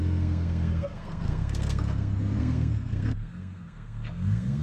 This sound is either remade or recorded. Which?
remade